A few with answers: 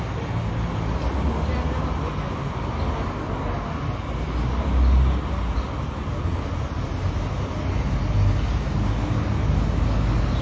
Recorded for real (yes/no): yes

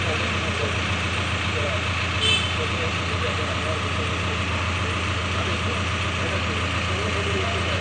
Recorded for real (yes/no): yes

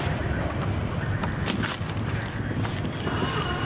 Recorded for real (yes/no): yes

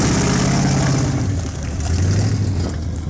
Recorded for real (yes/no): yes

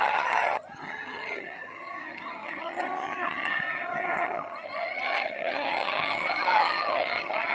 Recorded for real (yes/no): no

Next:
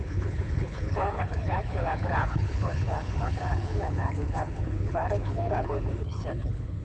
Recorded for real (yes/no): no